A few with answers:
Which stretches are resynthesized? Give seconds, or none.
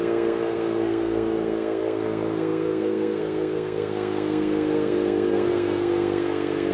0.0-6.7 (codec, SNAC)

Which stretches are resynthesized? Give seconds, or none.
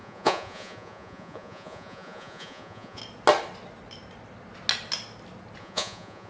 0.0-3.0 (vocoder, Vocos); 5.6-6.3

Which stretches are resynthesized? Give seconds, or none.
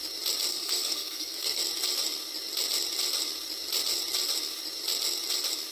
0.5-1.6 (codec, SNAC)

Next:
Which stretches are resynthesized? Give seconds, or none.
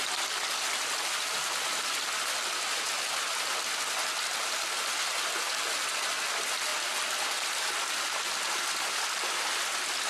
none